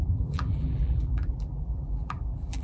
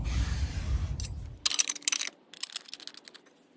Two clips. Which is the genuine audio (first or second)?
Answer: second